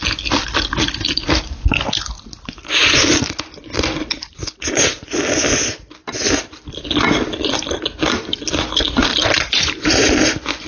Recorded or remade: recorded